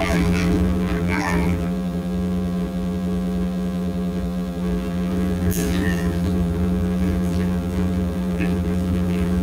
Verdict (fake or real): fake